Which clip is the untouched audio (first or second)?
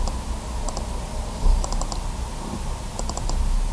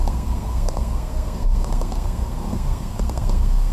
first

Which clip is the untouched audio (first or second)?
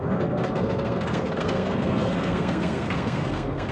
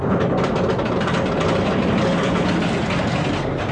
second